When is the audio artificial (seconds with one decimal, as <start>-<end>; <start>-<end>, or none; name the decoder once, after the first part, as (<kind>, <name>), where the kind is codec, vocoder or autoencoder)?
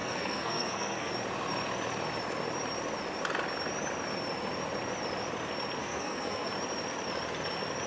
0.0-1.1 (codec, SNAC); 5.8-6.5